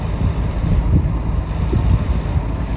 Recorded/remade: recorded